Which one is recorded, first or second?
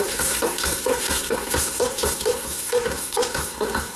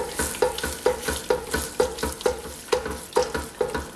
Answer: second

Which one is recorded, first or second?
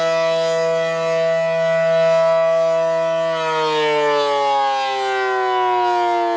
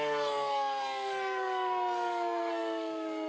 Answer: first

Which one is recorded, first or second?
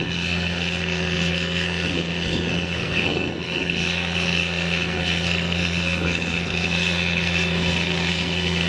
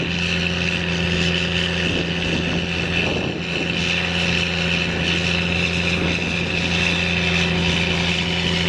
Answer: second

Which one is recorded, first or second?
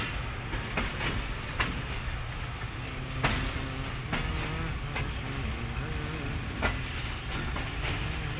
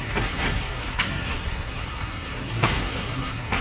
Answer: first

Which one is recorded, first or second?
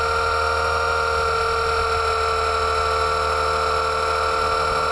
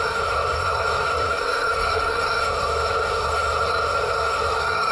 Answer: first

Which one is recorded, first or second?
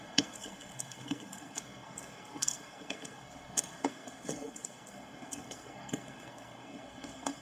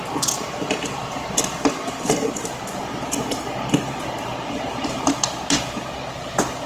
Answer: second